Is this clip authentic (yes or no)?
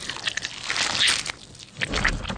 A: yes